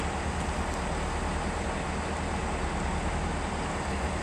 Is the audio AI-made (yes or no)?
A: no